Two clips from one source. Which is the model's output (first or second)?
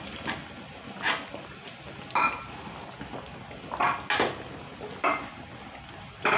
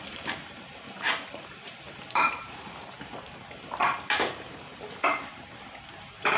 second